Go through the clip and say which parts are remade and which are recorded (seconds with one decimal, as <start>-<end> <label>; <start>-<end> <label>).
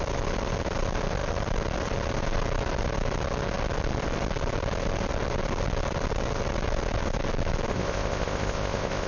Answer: 0.0-7.7 recorded; 7.7-9.1 remade